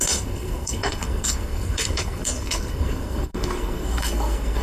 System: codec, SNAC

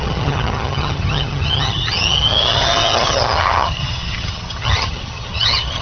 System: vocoder, HiFi-GAN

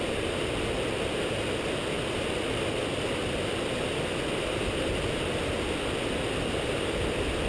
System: none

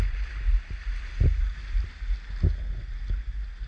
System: none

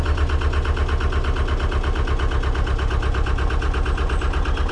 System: none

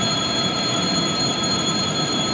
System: vocoder, BigVGAN v2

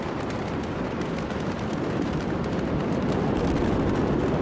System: vocoder, BigVGAN v2